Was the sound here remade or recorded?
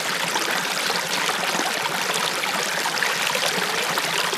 recorded